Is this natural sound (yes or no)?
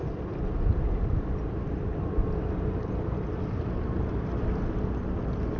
yes